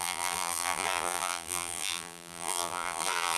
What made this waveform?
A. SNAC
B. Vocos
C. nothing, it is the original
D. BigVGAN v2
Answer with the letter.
D